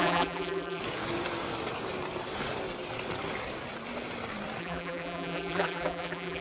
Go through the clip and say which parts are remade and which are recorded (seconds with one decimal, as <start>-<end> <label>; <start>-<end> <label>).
0.0-0.8 remade; 0.8-4.6 recorded; 4.6-6.4 remade